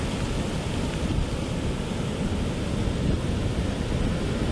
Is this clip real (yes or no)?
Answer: yes